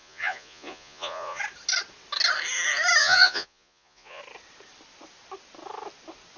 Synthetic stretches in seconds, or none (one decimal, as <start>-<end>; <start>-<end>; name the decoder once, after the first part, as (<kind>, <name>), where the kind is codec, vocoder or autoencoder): 0.0-1.4 (vocoder, Vocos); 3.0-4.2